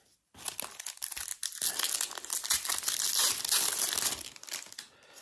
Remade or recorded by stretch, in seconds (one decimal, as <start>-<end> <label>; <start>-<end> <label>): 0.0-5.2 recorded